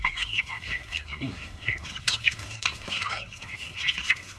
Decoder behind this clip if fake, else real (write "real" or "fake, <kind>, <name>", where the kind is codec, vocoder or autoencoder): fake, codec, SNAC